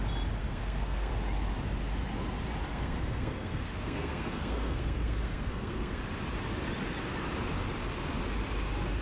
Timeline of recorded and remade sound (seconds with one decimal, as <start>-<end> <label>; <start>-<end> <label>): 0.0-0.4 recorded; 0.4-1.1 remade; 1.1-2.7 recorded; 2.7-6.0 remade; 6.0-9.0 recorded